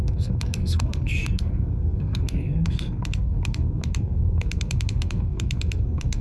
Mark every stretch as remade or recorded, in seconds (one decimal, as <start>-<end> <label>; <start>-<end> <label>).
0.0-6.2 remade